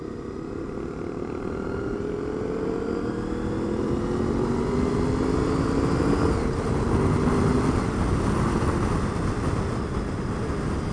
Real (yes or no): yes